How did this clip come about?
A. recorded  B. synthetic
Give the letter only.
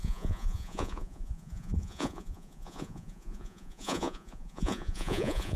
B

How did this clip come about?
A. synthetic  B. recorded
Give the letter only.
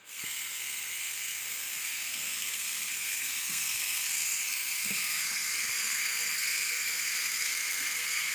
A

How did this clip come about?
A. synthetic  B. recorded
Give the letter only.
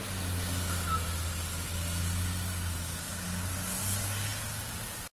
B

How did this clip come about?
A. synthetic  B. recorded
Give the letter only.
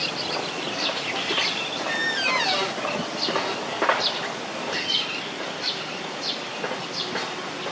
B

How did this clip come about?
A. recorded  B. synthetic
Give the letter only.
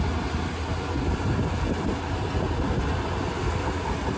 A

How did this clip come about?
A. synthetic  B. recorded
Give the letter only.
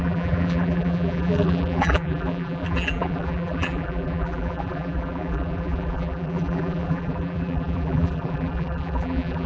A